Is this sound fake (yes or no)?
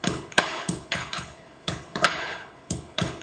yes